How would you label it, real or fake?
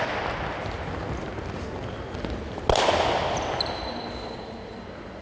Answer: real